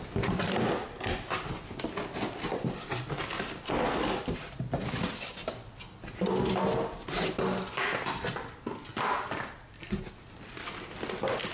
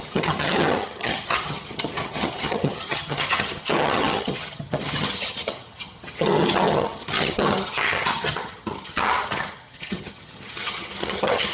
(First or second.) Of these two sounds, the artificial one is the second